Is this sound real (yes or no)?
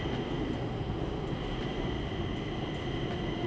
yes